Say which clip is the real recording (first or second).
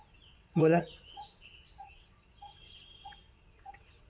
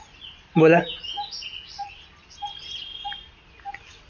second